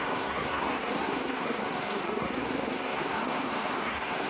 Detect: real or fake fake